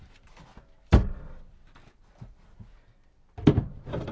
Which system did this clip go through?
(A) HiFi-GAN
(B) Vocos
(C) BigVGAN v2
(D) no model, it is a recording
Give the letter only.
D